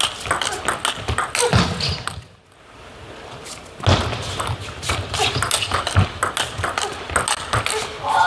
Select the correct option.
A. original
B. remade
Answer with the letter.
A